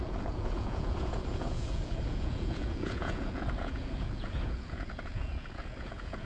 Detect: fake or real fake